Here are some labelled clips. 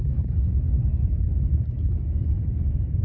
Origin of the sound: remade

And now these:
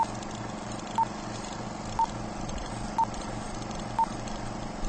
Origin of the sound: recorded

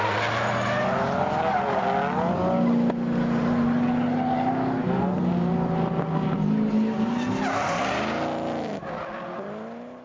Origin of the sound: recorded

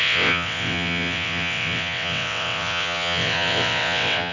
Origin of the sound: remade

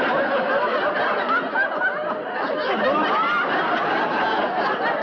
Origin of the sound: recorded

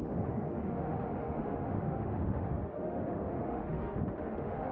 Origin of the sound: remade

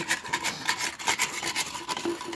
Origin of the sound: recorded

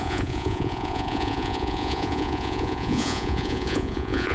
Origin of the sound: remade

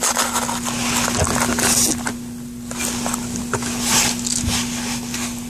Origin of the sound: recorded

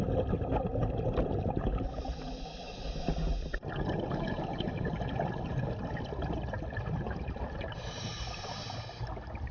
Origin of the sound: recorded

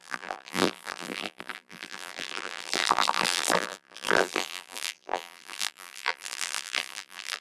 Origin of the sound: remade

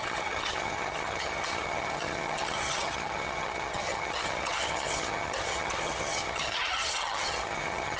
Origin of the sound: remade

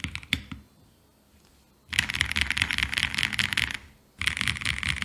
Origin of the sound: recorded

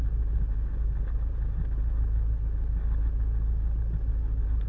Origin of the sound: recorded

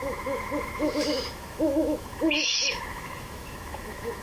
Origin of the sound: remade